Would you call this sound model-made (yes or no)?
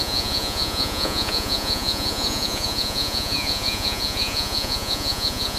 yes